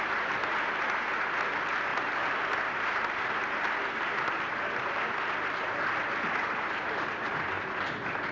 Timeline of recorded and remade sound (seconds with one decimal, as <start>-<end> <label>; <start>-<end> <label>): 0.0-8.3 recorded